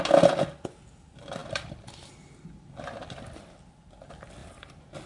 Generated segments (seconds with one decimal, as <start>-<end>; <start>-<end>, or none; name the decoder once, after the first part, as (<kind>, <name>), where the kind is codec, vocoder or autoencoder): 1.4-3.9 (vocoder, BigVGAN v2); 4.4-5.1